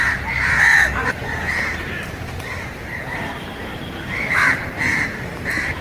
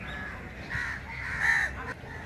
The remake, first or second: first